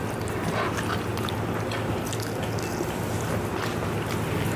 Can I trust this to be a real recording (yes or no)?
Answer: yes